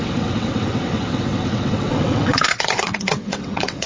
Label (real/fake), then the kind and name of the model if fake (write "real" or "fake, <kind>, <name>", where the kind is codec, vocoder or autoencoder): fake, vocoder, WaveNeXt